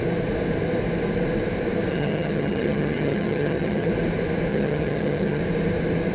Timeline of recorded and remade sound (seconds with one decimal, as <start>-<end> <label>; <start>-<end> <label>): 0.0-1.9 recorded; 1.9-3.9 remade; 3.9-4.5 recorded; 4.5-5.4 remade; 5.4-6.1 recorded